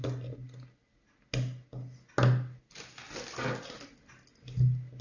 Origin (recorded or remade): recorded